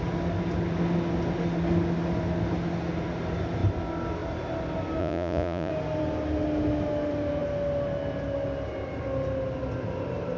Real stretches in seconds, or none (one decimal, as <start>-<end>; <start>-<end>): 0.0-5.0; 5.7-10.4